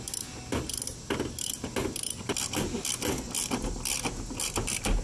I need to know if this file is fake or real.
real